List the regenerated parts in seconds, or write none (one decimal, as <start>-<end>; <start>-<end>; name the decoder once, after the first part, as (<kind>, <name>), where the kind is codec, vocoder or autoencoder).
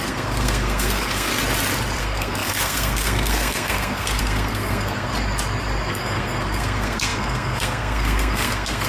0.0-1.3 (codec, SNAC); 2.0-5.1; 5.9-8.9